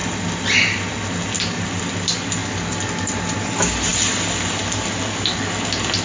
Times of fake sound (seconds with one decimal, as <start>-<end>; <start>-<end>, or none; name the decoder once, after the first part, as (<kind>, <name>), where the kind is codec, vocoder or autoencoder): none